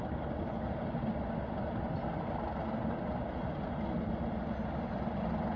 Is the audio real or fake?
real